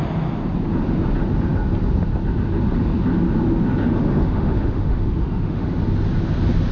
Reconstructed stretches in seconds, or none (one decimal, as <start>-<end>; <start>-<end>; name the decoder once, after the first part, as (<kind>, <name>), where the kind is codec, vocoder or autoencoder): 3.8-5.8 (autoencoder, DAC-VAE)